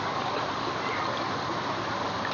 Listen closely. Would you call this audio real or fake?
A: real